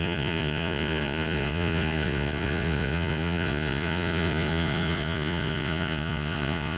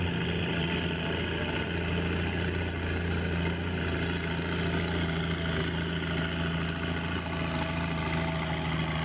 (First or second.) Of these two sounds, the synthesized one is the first